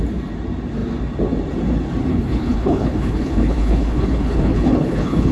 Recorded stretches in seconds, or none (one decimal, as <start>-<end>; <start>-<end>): 0.0-2.1